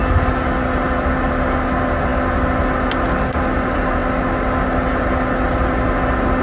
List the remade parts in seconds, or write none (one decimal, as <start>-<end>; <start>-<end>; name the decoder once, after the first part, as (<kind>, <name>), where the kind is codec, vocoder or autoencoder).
none